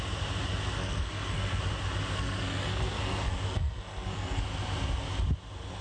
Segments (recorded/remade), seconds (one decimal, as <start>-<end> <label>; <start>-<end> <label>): 0.0-0.8 recorded; 0.8-1.6 remade; 1.6-2.1 recorded; 2.1-4.4 remade; 4.4-5.8 recorded